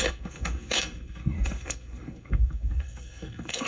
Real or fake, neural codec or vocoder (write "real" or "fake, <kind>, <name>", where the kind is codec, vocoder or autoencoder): fake, codec, SNAC